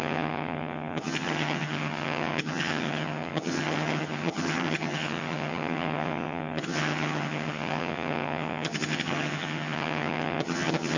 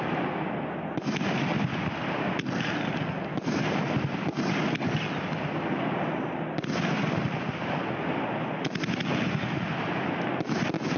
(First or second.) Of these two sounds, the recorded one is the second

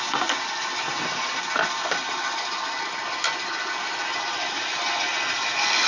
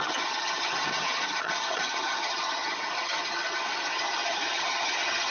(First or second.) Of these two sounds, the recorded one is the first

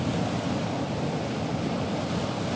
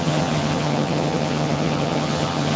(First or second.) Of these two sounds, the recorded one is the first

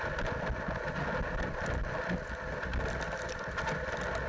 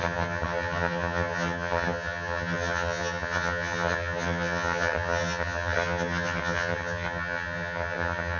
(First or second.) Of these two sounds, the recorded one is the first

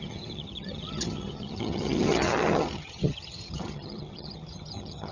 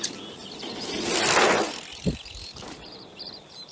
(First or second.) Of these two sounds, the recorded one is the second